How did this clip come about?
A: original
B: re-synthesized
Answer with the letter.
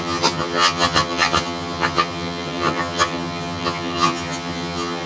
B